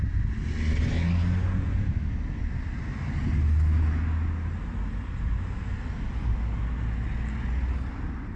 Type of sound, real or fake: real